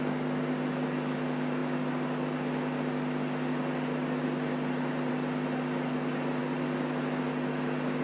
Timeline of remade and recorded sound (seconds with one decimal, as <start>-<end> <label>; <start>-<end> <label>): 0.0-8.0 recorded

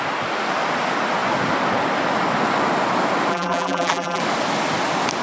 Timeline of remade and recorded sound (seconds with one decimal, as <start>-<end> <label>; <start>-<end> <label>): 0.0-3.3 recorded; 3.3-4.2 remade; 4.2-5.2 recorded

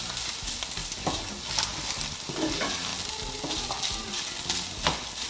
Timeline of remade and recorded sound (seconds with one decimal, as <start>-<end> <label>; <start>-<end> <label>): 0.0-5.3 recorded

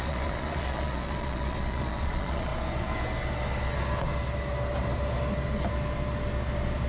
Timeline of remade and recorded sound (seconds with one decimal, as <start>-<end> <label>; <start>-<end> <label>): 0.0-2.5 remade; 2.5-6.9 recorded

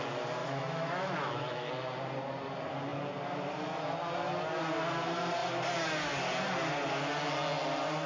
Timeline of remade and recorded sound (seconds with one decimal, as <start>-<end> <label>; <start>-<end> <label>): 0.0-0.4 recorded; 0.4-1.7 remade; 1.7-8.1 recorded

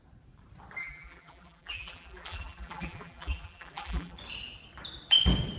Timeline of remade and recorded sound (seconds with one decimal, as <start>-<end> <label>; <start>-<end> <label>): 0.0-0.8 recorded; 0.8-4.2 remade; 4.2-5.6 recorded

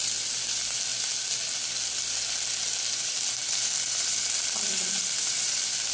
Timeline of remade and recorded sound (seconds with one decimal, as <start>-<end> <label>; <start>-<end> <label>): 0.0-0.9 remade; 0.9-1.9 recorded; 1.9-3.4 remade; 3.4-4.1 recorded; 4.1-5.9 remade